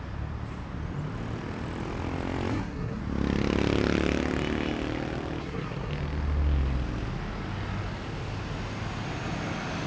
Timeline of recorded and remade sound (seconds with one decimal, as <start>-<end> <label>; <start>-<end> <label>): 0.0-2.5 recorded; 2.5-3.0 remade; 3.0-5.4 recorded; 5.4-5.9 remade; 5.9-9.9 recorded